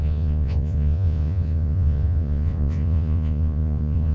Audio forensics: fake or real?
fake